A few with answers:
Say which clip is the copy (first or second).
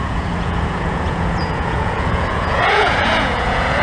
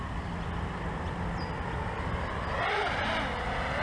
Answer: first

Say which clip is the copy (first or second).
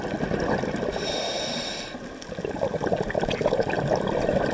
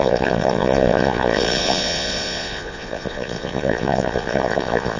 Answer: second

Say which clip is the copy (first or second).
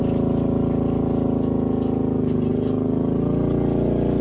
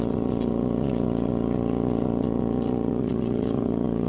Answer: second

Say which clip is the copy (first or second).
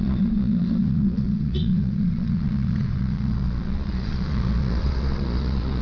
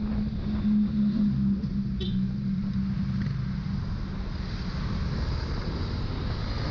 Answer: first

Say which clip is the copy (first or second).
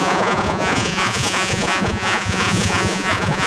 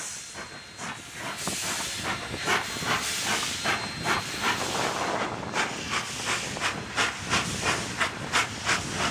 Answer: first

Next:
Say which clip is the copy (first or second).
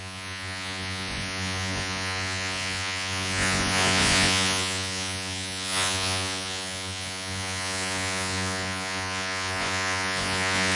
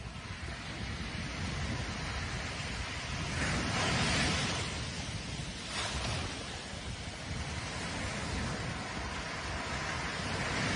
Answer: first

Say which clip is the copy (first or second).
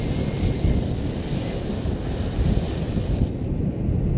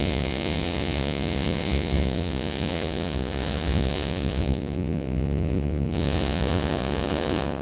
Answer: second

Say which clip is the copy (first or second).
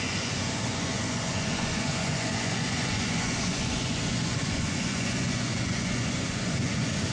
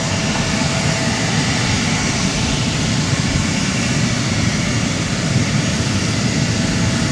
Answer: first